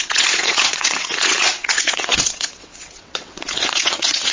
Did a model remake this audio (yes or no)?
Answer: yes